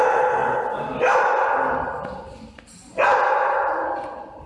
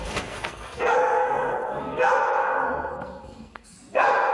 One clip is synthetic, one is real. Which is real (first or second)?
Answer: first